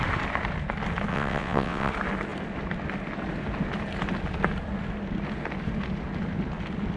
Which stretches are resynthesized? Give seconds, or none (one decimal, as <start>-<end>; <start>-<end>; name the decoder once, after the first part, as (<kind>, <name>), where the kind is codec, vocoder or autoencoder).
1.1-1.9 (vocoder, WaveNeXt)